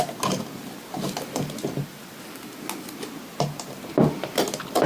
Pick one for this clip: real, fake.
real